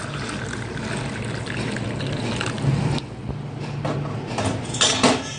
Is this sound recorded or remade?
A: recorded